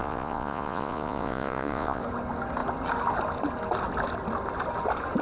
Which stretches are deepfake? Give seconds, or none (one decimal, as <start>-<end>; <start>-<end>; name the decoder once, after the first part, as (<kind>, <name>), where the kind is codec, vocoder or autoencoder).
0.0-2.0 (vocoder, Vocos)